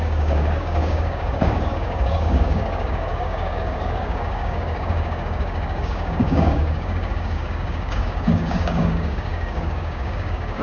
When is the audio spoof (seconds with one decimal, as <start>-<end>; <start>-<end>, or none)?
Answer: 0.0-10.6